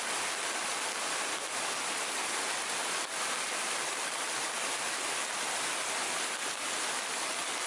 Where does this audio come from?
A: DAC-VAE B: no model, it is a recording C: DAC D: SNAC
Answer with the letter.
B